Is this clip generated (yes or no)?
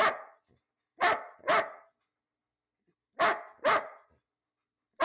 no